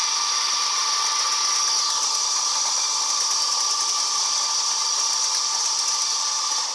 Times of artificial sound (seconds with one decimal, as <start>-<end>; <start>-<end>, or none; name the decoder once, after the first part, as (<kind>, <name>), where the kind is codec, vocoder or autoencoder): 0.0-0.8 (vocoder, BigVGAN v2)